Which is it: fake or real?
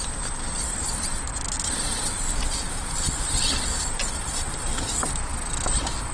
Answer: real